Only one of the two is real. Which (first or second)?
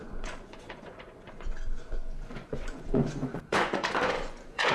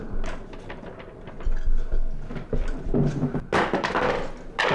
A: second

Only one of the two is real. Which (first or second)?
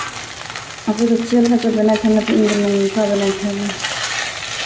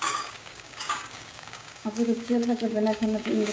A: first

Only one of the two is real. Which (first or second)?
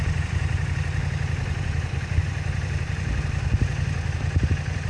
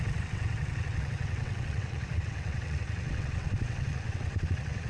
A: first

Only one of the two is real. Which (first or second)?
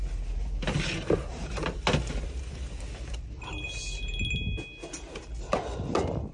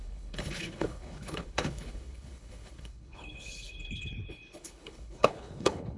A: first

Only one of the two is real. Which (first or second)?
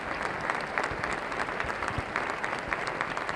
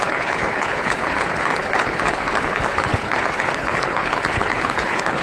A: first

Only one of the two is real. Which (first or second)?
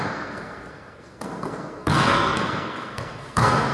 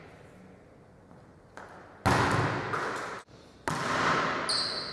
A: second